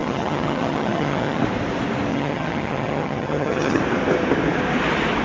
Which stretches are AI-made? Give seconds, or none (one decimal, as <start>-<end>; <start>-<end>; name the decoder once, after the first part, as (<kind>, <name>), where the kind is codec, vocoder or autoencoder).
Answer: 0.0-1.4 (vocoder, HiFi-GAN); 2.1-3.8

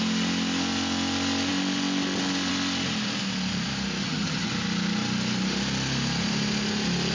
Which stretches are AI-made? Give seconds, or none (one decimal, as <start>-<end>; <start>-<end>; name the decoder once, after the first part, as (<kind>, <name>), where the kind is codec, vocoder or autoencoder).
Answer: 4.0-4.5 (vocoder, HiFi-GAN)

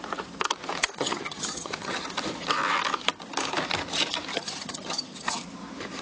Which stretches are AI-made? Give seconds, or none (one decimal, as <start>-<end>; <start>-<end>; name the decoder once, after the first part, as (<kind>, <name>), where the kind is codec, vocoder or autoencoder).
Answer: 0.8-2.0 (vocoder, HiFi-GAN); 4.3-5.4

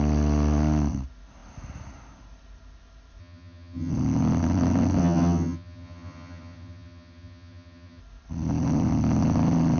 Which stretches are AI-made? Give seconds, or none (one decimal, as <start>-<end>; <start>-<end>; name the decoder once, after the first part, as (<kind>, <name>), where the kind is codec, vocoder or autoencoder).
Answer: 3.2-3.9 (vocoder, HiFi-GAN); 5.0-8.0

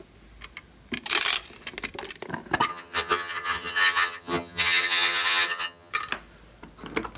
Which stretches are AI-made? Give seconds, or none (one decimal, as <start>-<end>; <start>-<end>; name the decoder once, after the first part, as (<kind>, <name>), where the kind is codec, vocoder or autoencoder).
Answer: 2.7-5.9 (vocoder, HiFi-GAN)

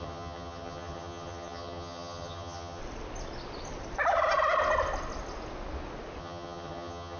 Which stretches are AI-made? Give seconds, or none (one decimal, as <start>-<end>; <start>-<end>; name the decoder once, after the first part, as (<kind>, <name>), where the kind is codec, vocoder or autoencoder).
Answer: 0.0-2.8 (vocoder, HiFi-GAN); 6.2-7.2

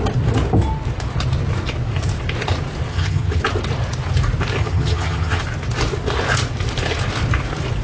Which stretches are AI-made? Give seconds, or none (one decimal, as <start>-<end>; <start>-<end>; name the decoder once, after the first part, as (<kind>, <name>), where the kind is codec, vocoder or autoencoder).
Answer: 2.9-3.4 (vocoder, HiFi-GAN); 4.6-5.4